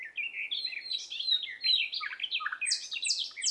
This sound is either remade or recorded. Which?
recorded